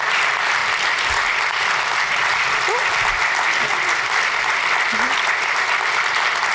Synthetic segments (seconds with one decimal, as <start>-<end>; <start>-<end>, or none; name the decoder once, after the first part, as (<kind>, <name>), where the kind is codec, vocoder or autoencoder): none